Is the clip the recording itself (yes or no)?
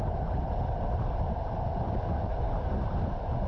yes